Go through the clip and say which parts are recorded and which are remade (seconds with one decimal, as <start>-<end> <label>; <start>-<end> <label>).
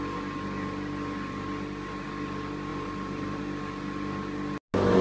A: 0.0-2.7 recorded; 2.7-3.4 remade; 3.4-5.0 recorded